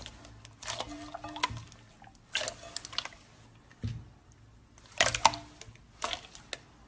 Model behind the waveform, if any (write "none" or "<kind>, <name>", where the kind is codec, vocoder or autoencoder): none